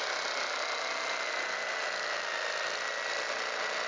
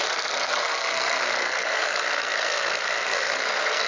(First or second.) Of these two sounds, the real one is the first